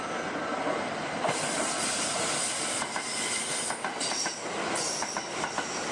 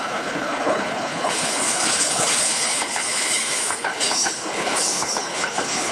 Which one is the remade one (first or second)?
second